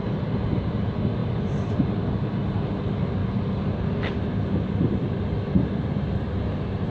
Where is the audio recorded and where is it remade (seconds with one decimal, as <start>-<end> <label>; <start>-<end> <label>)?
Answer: 0.0-1.2 recorded; 1.2-1.8 remade; 1.8-3.2 recorded; 3.2-5.2 remade; 5.2-6.9 recorded